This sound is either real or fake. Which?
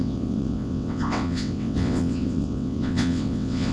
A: fake